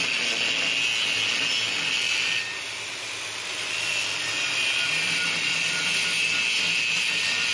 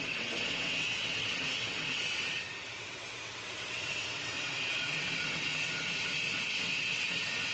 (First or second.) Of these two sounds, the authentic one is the first